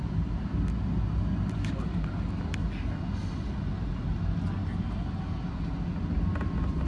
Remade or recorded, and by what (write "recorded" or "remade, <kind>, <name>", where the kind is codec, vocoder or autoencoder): recorded